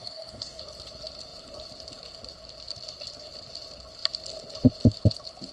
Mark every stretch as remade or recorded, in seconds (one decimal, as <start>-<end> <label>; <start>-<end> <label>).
0.0-0.6 remade; 0.6-5.5 recorded